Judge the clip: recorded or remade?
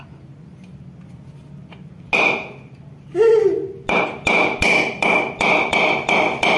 recorded